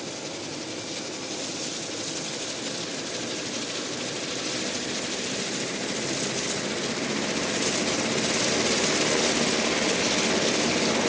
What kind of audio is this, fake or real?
real